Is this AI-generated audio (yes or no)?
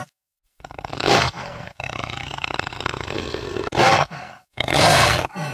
yes